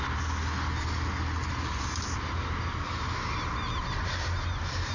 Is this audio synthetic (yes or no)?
no